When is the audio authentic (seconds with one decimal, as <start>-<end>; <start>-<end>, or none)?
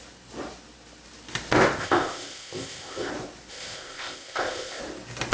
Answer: 0.0-1.8; 3.1-3.5; 4.8-5.3